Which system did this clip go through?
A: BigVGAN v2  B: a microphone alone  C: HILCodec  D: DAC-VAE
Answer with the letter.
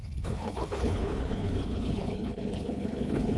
C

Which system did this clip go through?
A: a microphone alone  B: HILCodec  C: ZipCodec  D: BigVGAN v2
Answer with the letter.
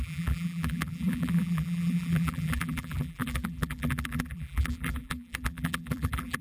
D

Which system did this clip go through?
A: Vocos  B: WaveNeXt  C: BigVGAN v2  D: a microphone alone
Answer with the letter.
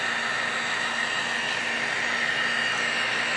D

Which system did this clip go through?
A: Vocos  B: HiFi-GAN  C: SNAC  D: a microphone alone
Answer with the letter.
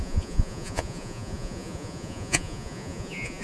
A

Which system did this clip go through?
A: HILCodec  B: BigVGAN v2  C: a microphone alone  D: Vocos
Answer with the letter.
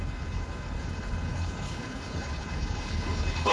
A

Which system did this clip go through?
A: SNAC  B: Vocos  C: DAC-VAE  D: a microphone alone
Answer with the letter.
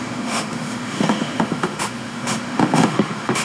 C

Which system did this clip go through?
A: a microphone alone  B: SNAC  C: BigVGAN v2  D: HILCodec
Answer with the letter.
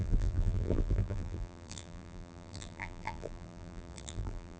C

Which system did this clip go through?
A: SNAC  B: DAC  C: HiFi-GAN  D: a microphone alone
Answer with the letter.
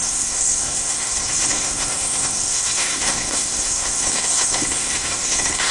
A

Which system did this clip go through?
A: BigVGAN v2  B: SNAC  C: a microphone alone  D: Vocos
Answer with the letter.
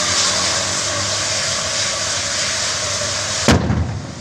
C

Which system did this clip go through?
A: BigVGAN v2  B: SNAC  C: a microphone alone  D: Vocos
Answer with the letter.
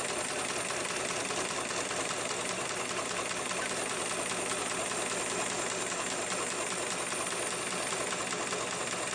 C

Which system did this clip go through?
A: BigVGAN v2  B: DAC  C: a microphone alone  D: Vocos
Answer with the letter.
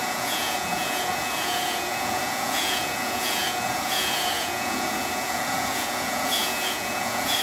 D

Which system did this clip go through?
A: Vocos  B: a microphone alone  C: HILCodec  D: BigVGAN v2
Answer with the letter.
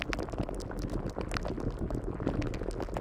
B